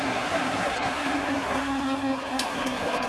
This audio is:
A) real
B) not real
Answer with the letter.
B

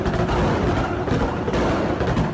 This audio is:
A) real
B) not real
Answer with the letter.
A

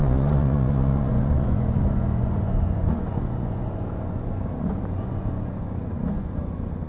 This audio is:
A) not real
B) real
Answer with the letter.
A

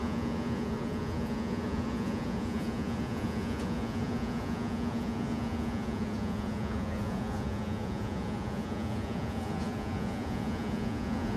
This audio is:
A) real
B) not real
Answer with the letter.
B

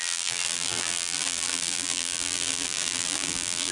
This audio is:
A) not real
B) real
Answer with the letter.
A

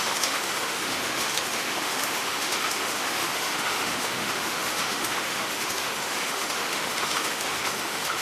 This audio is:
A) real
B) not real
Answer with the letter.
B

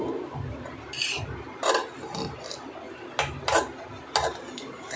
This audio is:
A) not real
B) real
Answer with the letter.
B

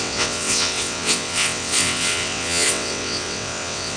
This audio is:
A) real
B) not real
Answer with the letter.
B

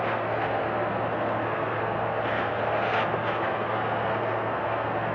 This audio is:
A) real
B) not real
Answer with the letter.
B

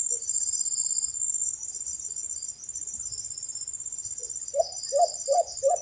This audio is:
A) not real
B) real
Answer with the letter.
B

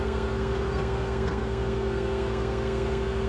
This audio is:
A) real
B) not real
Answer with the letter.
B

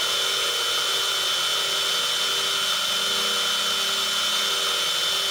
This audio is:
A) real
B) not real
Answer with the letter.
A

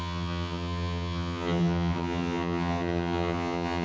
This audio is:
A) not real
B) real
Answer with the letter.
A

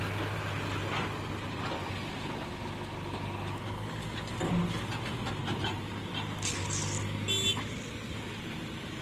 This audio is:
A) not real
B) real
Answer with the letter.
B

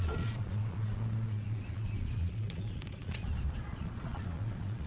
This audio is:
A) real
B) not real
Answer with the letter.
B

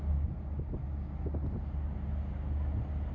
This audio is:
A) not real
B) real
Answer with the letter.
B